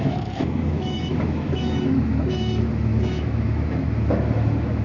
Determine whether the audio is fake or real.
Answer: fake